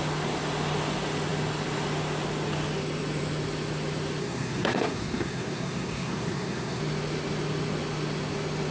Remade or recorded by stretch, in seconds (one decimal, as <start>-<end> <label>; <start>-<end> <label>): 0.0-4.2 recorded; 4.2-6.8 remade; 6.8-8.7 recorded